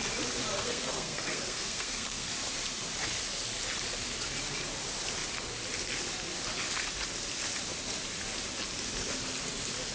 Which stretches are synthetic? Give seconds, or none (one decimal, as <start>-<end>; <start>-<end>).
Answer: 0.5-2.3